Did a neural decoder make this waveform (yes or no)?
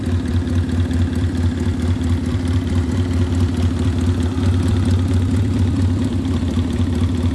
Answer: yes